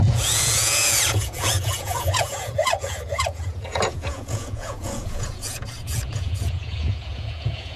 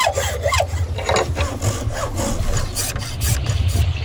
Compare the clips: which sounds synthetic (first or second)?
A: first